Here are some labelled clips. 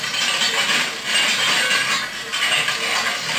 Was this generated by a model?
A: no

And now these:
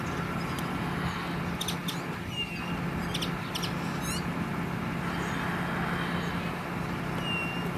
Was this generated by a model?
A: no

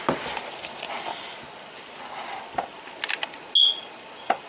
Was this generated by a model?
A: no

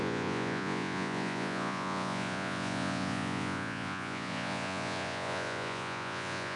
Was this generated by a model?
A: yes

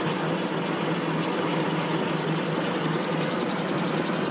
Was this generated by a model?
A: yes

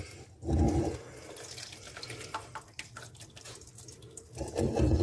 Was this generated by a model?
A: no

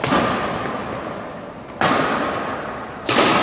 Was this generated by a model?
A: no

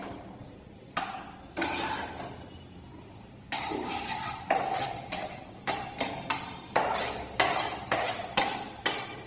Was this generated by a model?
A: no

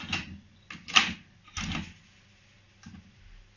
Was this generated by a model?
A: no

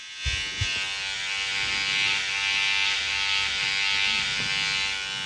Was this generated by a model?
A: no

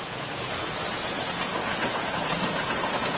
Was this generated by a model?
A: yes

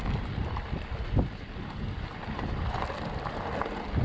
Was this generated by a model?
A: no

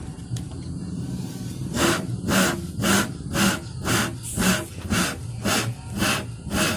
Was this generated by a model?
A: no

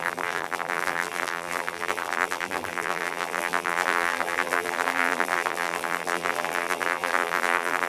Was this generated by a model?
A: yes